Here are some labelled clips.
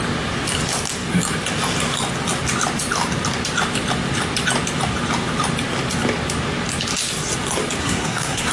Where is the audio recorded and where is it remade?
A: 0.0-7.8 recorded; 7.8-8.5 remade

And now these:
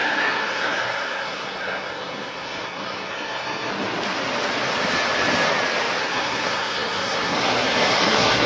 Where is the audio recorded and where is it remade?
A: 0.0-3.7 remade; 3.7-6.0 recorded; 6.0-8.5 remade

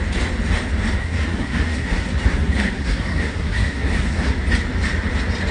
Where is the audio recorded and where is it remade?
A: 0.0-1.0 recorded; 1.0-4.3 remade; 4.3-5.5 recorded

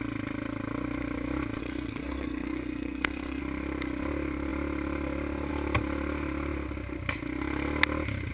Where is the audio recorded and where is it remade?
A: 0.0-1.6 recorded; 1.6-3.4 remade; 3.4-8.3 recorded

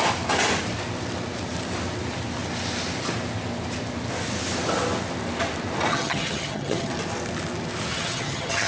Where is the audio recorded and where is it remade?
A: 0.0-5.9 recorded; 5.9-6.9 remade; 6.9-7.9 recorded; 7.9-8.7 remade

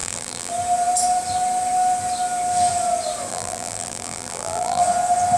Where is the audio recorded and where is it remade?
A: 0.0-0.5 remade; 0.5-3.3 recorded; 3.3-4.8 remade; 4.8-5.4 recorded

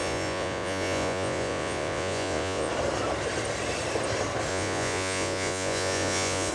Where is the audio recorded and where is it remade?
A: 0.0-2.7 remade; 2.7-4.5 recorded; 4.5-6.5 remade

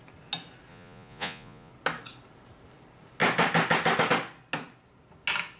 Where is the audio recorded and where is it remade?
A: 0.0-0.7 recorded; 0.7-1.7 remade; 1.7-5.6 recorded